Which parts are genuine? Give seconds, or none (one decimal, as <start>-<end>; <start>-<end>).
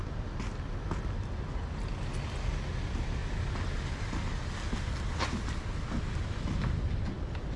0.0-7.6